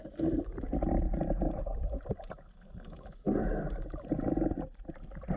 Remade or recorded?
recorded